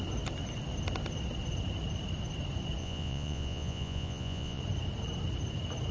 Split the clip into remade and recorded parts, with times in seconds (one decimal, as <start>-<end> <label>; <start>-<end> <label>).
0.0-2.8 recorded; 2.8-4.6 remade; 4.6-5.9 recorded